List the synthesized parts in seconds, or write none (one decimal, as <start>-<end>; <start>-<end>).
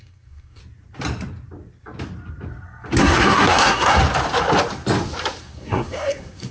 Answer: 0.0-0.6; 3.0-4.0; 5.4-6.5